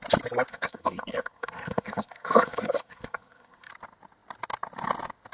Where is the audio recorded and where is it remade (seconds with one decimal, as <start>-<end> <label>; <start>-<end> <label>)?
0.0-0.5 recorded; 0.5-3.7 remade; 3.7-5.3 recorded